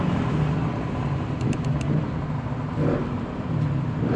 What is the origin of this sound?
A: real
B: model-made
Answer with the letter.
A